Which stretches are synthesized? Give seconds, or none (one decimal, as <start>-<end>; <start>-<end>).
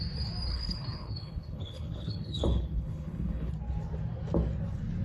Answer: 0.5-3.5